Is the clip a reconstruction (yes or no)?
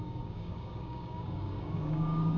yes